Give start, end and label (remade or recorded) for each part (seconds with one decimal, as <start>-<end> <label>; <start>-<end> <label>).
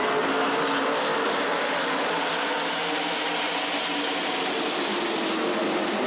0.0-6.1 recorded